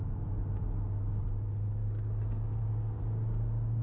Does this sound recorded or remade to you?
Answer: recorded